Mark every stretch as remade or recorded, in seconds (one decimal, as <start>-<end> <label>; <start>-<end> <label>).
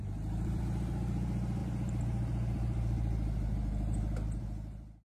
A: 0.0-1.6 remade; 1.6-5.1 recorded